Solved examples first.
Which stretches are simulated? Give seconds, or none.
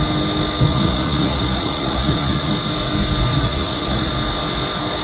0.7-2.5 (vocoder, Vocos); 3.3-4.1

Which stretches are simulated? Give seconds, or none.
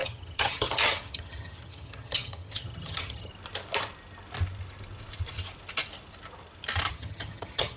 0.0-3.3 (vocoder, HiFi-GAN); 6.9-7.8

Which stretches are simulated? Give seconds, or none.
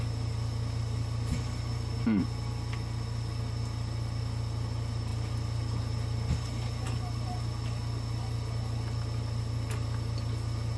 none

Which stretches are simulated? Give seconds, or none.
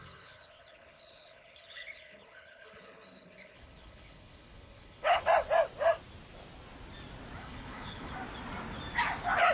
0.0-5.2 (codec, HILCodec); 7.4-8.1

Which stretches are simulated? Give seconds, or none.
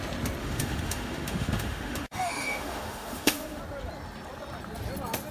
0.4-3.6 (autoencoder, DAC-VAE)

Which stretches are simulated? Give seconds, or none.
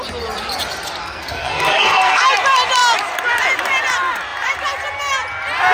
1.0-2.2 (codec, SNAC)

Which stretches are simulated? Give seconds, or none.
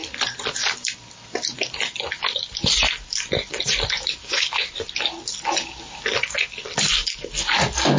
4.2-4.7 (codec, DAC)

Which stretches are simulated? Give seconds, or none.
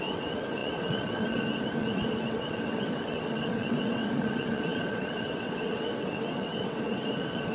0.0-7.5 (vocoder, WaveNeXt)